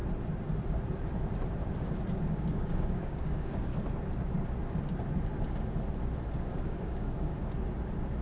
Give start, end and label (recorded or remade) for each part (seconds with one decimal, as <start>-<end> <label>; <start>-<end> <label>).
0.0-2.2 recorded; 2.2-3.7 remade; 3.7-6.3 recorded; 6.3-7.3 remade; 7.3-8.2 recorded